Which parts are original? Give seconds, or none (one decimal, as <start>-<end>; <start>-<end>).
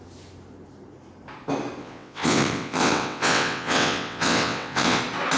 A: 0.0-1.8; 5.0-5.4